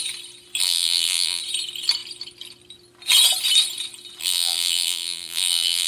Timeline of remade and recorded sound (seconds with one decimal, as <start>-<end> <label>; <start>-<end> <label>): 0.0-0.6 recorded; 0.6-1.4 remade; 1.4-4.2 recorded; 4.2-5.9 remade